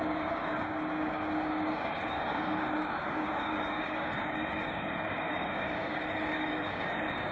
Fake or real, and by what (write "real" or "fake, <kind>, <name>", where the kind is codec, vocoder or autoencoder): fake, codec, DAC